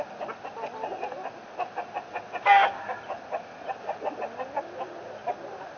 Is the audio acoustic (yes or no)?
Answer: yes